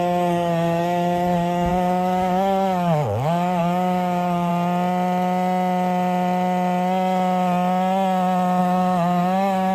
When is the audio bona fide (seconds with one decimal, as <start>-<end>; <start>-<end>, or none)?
4.5-8.6